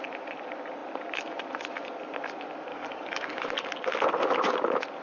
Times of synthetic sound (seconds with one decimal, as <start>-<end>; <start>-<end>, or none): 2.7-3.4